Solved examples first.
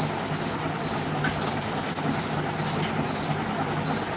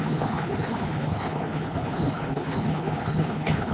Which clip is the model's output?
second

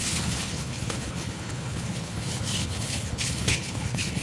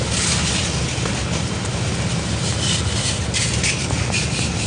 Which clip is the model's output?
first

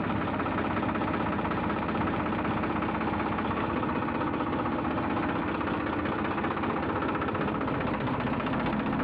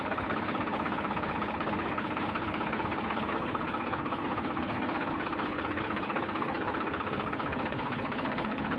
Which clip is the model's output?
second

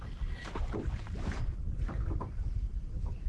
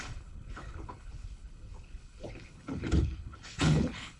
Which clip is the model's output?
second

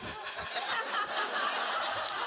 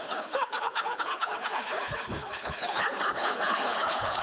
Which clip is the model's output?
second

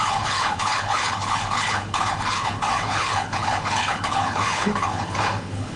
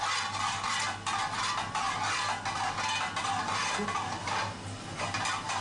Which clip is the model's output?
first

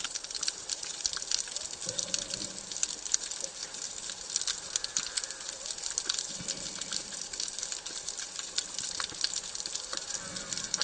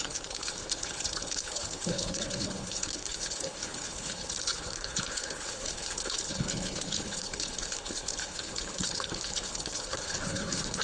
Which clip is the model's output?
second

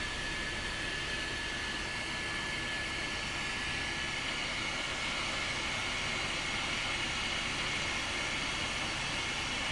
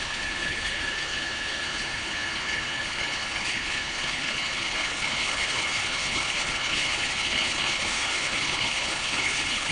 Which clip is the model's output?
second